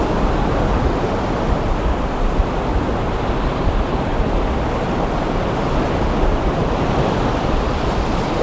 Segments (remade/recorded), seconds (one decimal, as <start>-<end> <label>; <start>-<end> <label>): 0.0-8.4 recorded